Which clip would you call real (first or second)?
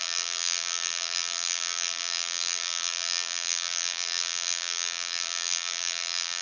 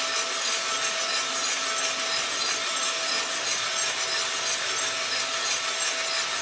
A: second